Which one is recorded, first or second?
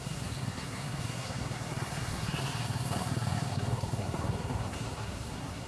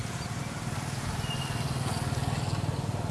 second